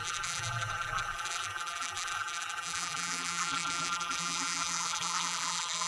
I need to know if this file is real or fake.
fake